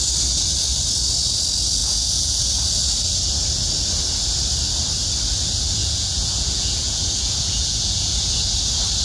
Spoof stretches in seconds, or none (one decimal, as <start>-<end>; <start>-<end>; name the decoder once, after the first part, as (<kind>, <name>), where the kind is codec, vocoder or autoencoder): 1.8-2.5 (vocoder, Vocos); 5.8-8.3